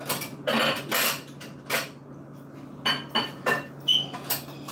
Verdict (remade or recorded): recorded